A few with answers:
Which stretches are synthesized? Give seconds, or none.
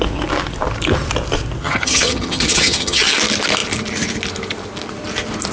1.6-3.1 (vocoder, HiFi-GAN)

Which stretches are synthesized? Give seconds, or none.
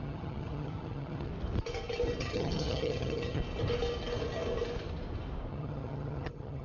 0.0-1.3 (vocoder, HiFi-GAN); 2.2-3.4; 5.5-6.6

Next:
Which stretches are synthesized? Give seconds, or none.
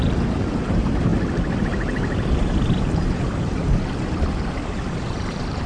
0.0-1.1 (vocoder, BigVGAN v2); 1.6-3.6; 5.1-5.7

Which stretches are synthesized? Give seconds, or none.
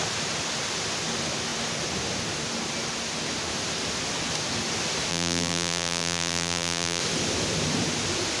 5.1-7.0 (vocoder, BigVGAN v2)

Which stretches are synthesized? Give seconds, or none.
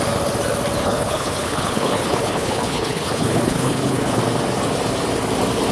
0.8-4.2 (codec, HILCodec)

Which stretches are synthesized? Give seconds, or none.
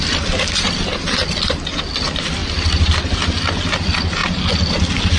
none